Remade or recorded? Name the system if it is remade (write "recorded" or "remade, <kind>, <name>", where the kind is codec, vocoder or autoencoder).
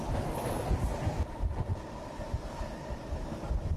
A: recorded